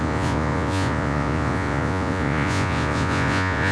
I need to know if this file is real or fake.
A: fake